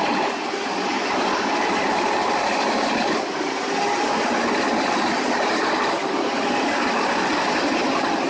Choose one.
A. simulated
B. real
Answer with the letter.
A